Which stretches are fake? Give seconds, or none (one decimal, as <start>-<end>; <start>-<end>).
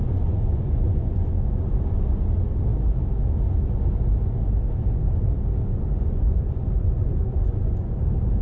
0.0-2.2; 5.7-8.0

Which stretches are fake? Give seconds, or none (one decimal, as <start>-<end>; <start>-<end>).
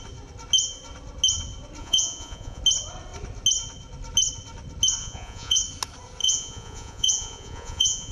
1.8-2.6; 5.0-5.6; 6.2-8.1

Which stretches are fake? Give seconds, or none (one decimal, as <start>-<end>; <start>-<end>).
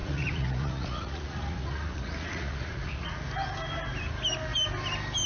0.0-3.2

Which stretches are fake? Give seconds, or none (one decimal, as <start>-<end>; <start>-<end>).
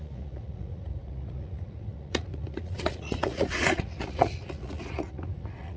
0.0-5.8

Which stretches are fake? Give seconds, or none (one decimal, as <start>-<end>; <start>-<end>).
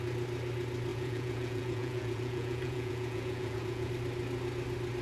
0.9-3.9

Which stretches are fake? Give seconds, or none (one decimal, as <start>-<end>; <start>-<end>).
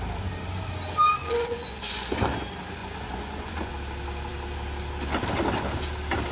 1.2-2.4; 2.8-3.7